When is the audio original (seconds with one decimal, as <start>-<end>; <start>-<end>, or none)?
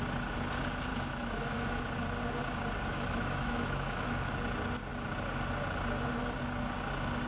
0.0-0.9; 1.8-2.9; 4.3-7.3